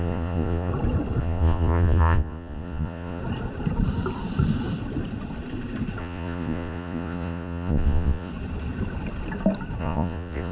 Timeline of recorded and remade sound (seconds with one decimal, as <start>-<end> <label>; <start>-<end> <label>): 0.0-0.7 remade; 0.7-1.2 recorded; 1.2-3.2 remade; 3.2-6.0 recorded; 6.0-8.3 remade; 8.3-9.8 recorded; 9.8-10.5 remade